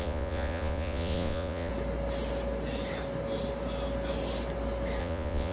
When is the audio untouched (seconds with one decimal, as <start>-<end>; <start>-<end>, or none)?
1.7-5.0